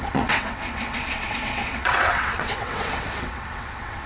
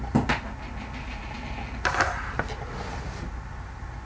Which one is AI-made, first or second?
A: first